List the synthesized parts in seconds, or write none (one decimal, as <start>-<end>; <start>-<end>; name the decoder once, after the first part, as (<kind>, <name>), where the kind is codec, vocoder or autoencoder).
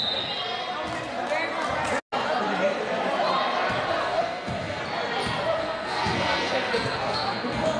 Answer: 4.0-4.8 (codec, SNAC); 5.6-7.8